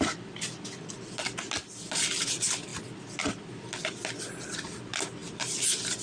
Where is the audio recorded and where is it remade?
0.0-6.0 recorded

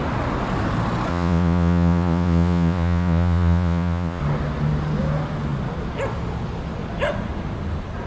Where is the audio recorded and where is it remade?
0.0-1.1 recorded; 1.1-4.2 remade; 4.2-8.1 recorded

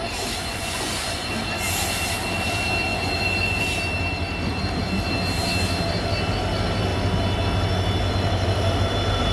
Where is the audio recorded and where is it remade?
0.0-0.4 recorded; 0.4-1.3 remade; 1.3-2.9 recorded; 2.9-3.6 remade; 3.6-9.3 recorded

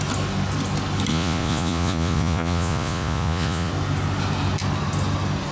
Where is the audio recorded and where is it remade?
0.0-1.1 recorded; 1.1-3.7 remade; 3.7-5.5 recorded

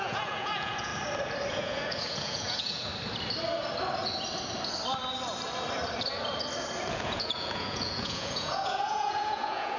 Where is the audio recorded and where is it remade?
0.0-0.9 remade; 0.9-1.5 recorded; 1.5-2.9 remade; 2.9-6.9 recorded; 6.9-9.8 remade

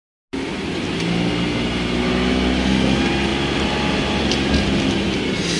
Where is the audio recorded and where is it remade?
0.0-5.6 recorded

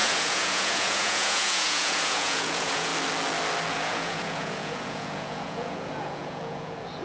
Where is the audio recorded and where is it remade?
0.0-2.9 remade; 2.9-3.7 recorded; 3.7-7.0 remade

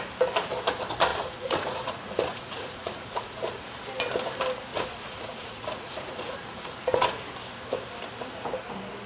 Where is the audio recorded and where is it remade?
0.0-1.1 recorded; 1.1-3.6 remade; 3.6-4.7 recorded; 4.7-7.2 remade; 7.2-9.1 recorded